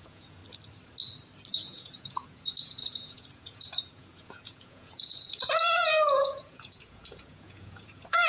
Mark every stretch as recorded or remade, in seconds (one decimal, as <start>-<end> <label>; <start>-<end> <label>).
0.0-0.4 remade; 0.4-1.5 recorded; 1.5-8.3 remade